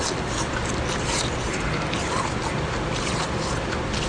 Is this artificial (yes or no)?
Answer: no